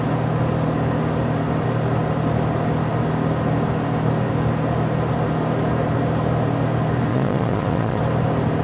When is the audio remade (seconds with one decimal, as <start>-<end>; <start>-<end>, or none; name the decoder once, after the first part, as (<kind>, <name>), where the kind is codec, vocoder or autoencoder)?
7.1-8.0 (vocoder, Vocos)